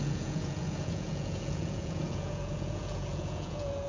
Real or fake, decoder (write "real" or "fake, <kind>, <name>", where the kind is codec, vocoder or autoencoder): fake, vocoder, Vocos